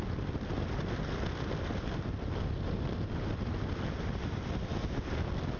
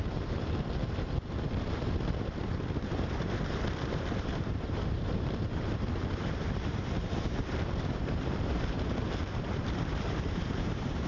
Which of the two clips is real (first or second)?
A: first